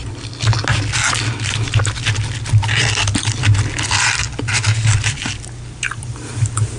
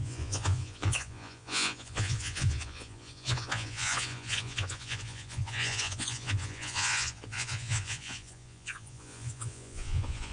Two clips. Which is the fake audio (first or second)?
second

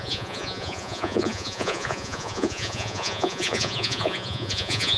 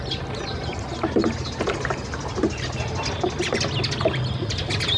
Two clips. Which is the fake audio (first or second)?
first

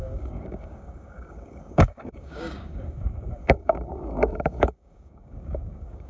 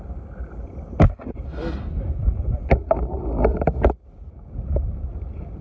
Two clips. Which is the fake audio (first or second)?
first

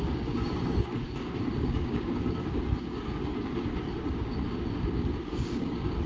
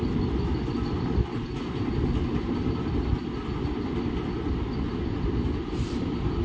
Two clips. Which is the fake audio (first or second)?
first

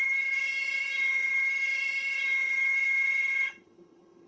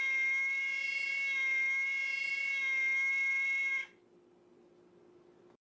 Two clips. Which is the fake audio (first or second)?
first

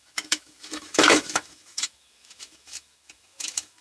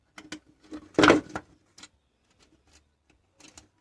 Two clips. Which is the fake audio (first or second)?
first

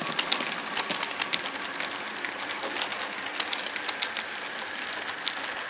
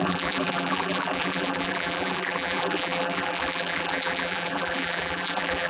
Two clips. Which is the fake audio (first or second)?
second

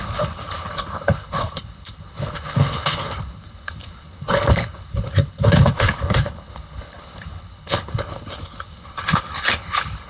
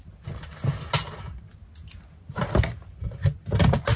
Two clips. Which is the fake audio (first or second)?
first